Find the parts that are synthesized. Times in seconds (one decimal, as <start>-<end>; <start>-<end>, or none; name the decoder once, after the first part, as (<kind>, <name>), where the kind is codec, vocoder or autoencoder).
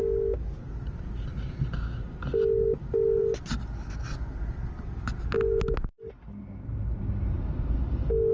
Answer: none